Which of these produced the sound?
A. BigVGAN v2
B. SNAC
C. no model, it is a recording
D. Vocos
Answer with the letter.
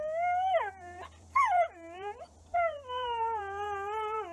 A